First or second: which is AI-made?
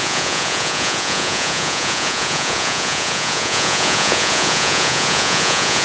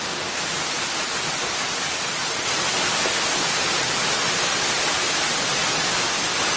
first